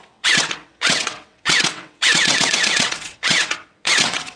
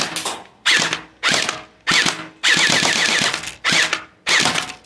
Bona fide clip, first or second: second